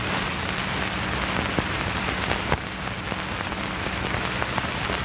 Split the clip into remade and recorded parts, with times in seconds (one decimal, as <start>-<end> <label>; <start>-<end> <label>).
0.0-5.0 recorded